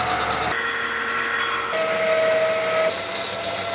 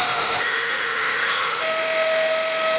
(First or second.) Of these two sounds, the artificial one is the second